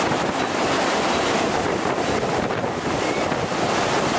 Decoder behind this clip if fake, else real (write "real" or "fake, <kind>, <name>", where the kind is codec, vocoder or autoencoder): real